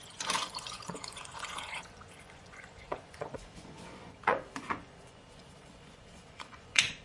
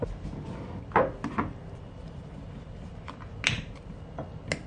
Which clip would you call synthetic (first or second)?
first